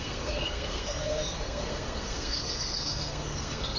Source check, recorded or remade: remade